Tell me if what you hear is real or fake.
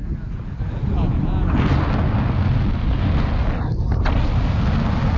real